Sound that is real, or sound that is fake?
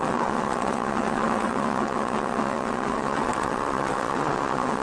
fake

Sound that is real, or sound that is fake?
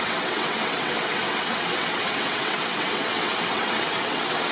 fake